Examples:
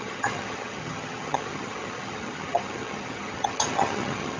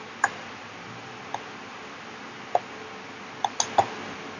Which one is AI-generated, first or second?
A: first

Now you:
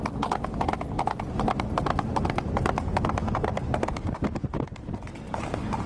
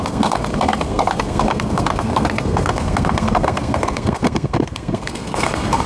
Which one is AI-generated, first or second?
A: second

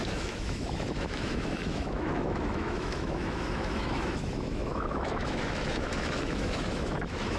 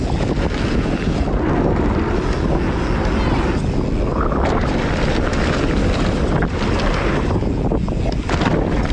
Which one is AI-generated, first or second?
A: first